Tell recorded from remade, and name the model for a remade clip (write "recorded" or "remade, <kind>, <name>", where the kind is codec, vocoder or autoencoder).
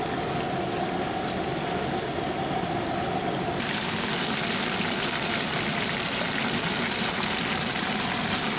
recorded